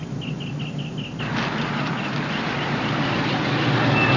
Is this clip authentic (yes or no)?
yes